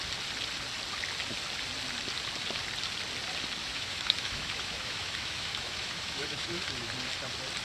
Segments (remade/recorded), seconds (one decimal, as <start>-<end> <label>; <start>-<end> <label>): 0.0-3.6 recorded; 3.6-6.9 remade; 6.9-7.6 recorded